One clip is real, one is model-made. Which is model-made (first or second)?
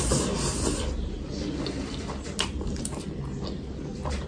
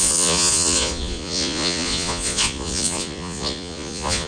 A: second